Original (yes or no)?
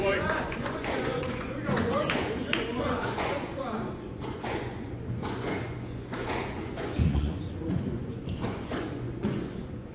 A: no